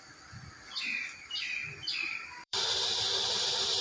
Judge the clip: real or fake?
fake